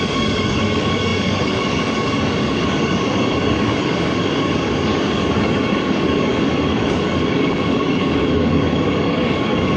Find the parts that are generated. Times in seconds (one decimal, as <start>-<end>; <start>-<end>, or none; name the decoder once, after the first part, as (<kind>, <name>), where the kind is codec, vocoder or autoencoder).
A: 0.0-9.8 (codec, DAC)